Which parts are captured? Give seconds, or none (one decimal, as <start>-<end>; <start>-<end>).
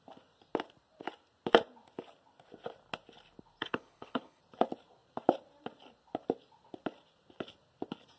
0.0-3.6; 4.4-8.2